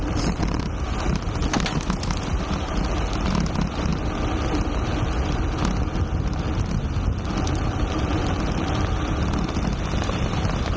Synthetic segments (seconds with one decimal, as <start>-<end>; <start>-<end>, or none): none